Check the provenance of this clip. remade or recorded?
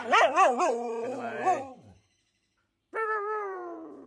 remade